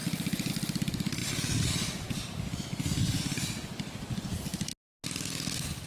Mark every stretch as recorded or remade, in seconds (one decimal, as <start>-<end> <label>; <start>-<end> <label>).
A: 0.0-5.9 recorded